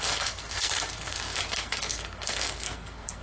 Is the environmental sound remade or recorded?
remade